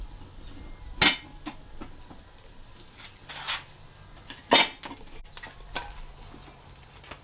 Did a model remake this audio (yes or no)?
no